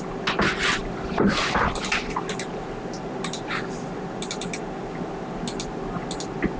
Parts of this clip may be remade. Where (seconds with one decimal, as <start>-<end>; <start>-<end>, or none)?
none